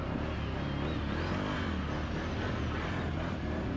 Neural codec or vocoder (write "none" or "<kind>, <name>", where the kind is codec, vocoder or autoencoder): none